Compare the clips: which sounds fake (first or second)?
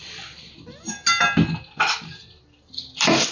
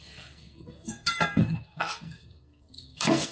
second